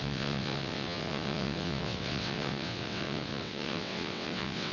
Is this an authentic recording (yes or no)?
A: no